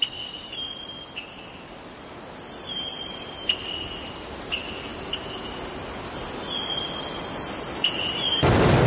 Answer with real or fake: real